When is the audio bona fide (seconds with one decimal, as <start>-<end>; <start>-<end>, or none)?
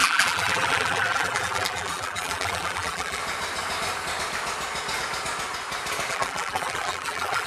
3.2-6.1